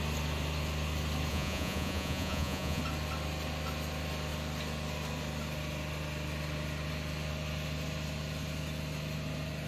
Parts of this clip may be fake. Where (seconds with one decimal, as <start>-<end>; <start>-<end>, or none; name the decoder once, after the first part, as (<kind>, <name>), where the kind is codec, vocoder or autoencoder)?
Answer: 1.3-2.8 (vocoder, Vocos)